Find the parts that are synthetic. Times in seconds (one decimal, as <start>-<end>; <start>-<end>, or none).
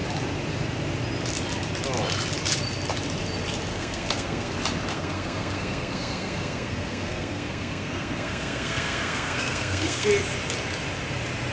3.7-4.5; 4.9-10.1